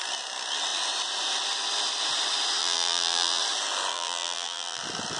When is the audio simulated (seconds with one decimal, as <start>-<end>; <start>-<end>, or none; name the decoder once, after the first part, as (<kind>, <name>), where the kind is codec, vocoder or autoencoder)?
2.6-3.4 (vocoder, BigVGAN v2); 3.9-4.8